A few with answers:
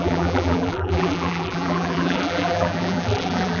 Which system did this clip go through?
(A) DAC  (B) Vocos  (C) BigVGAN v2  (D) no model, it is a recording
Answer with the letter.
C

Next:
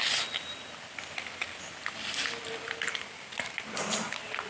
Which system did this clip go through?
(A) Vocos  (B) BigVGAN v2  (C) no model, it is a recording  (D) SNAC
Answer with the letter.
C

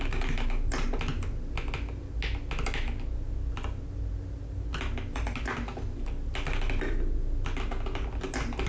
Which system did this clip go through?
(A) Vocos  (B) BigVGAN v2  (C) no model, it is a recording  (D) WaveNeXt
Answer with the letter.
C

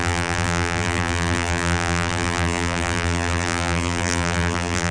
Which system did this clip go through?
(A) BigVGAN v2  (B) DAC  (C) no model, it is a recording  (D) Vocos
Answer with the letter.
A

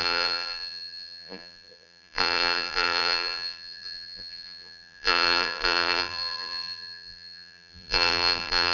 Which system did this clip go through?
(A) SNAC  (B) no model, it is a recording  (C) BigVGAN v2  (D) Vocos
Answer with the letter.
C